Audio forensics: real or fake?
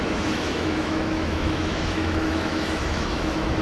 fake